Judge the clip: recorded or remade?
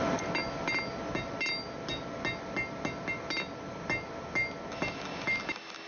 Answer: recorded